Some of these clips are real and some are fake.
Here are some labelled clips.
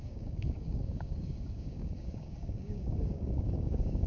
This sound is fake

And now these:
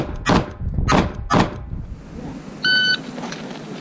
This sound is real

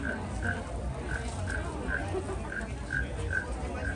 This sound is real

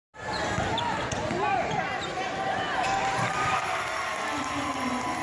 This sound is real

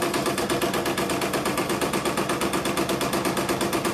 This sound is real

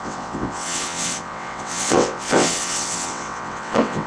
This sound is fake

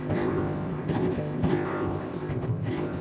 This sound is fake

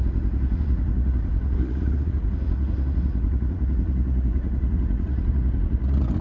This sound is fake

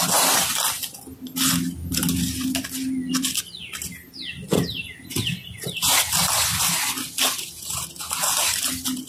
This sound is real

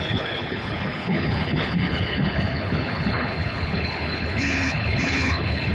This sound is fake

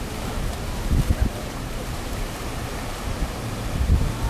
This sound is fake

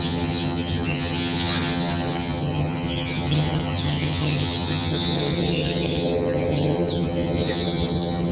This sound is fake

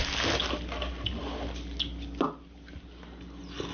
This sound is real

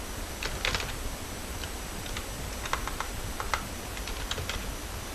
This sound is real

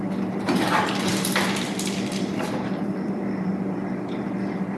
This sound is fake